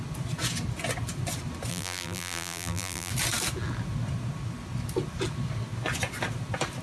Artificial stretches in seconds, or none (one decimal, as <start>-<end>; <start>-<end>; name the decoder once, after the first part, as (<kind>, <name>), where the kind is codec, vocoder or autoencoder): 1.7-3.1 (vocoder, BigVGAN v2)